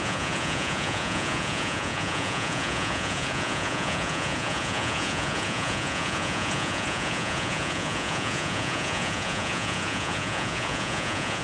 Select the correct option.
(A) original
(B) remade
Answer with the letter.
B